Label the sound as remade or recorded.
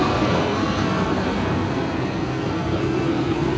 remade